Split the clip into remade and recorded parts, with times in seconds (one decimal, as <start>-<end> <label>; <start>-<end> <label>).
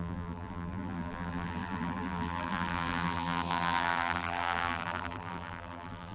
0.0-6.1 remade